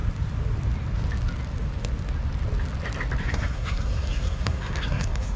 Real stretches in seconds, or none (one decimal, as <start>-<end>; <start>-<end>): 0.0-3.2

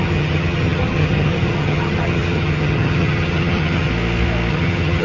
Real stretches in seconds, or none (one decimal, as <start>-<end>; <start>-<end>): 3.9-4.5

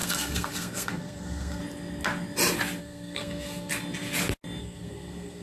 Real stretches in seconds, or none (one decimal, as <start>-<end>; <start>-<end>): 1.6-2.8; 3.7-4.6